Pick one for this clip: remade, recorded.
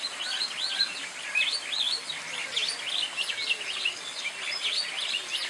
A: recorded